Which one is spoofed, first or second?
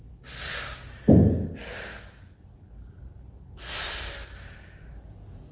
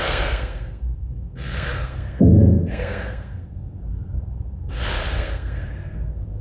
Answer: second